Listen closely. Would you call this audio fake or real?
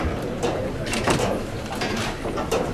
fake